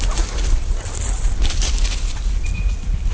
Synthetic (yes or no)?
no